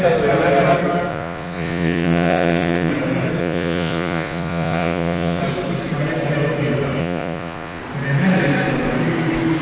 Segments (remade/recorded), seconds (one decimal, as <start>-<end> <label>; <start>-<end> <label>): 0.0-1.1 recorded; 1.1-2.9 remade; 2.9-3.4 recorded; 3.4-5.4 remade; 5.4-7.0 recorded; 7.0-7.8 remade; 7.8-9.6 recorded